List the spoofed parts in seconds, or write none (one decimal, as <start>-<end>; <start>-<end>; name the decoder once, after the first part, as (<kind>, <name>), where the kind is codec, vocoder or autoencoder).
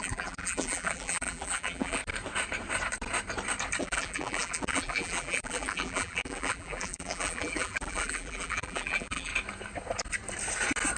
0.0-2.0 (vocoder, BigVGAN v2); 3.8-9.3